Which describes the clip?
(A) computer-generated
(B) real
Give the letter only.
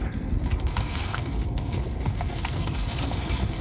A